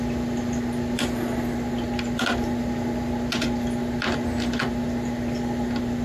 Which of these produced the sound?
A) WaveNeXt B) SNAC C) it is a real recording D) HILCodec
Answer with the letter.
C